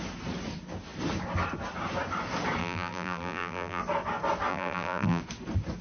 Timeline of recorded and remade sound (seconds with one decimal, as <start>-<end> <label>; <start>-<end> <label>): 0.0-2.6 recorded; 2.6-3.8 remade; 3.8-4.5 recorded; 4.5-5.2 remade; 5.2-5.8 recorded